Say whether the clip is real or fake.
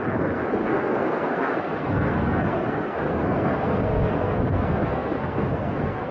fake